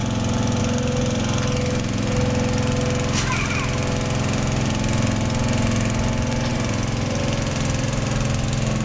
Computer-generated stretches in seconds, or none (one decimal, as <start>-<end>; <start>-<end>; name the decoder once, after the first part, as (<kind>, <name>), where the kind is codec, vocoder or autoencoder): 6.5-7.2 (vocoder, BigVGAN v2)

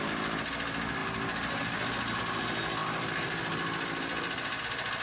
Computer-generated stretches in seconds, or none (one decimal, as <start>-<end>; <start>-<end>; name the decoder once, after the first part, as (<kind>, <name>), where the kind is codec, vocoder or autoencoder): none

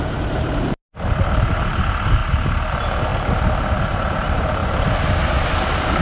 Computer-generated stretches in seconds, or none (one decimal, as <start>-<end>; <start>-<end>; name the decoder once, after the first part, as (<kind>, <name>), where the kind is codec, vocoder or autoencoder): 0.0-0.8 (vocoder, BigVGAN v2); 1.5-2.2; 2.7-3.1; 3.9-4.6; 5.5-6.0

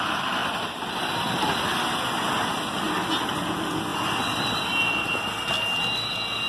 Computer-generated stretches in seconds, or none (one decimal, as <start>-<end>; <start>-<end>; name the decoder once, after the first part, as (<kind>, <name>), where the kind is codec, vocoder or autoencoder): 0.4-1.0 (vocoder, BigVGAN v2)